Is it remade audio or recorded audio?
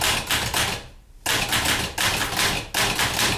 recorded